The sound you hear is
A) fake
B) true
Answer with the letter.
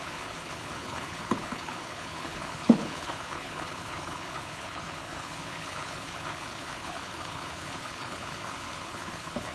A